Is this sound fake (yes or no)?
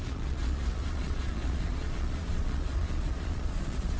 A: yes